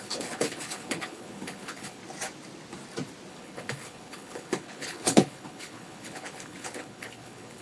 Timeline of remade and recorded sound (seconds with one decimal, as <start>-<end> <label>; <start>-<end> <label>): 0.0-2.0 remade; 2.0-3.3 recorded; 3.3-7.6 remade